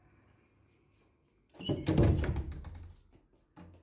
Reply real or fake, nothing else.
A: real